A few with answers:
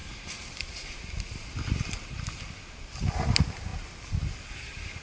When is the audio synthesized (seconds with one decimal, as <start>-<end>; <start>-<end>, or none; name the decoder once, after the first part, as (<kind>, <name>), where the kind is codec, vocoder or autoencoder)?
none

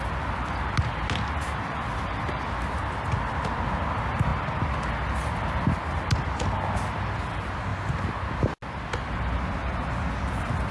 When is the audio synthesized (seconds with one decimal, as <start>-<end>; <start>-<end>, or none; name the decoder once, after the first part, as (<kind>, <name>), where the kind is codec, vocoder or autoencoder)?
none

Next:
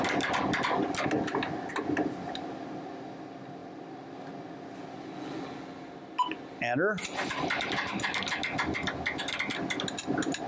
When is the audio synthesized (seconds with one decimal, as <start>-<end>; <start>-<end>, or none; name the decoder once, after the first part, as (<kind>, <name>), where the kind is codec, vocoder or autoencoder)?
none